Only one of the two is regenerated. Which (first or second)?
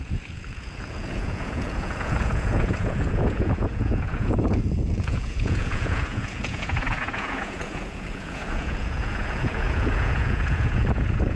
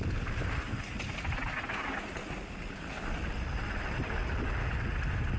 first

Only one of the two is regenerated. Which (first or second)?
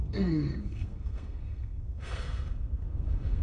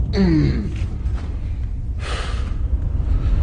first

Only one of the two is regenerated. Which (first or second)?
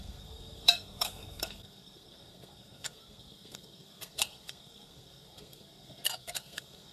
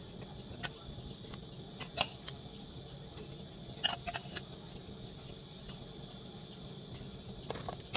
first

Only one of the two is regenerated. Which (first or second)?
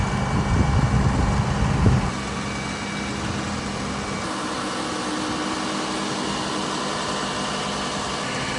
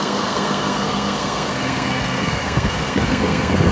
second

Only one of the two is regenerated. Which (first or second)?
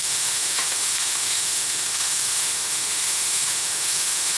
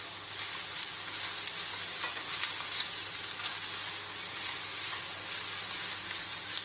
first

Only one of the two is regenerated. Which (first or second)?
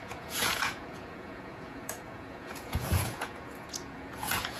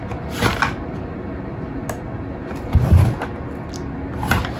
first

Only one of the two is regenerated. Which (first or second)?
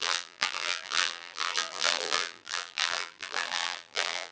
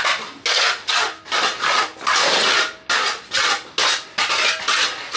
first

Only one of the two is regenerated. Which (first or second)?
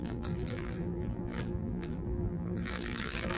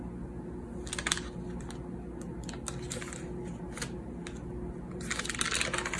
first